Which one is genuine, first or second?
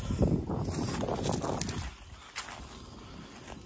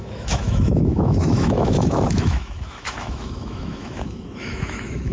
first